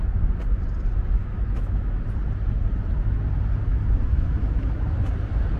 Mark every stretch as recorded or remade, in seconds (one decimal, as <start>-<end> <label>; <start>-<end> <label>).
0.0-1.2 recorded; 1.2-2.0 remade; 2.0-3.7 recorded; 3.7-4.8 remade; 4.8-5.6 recorded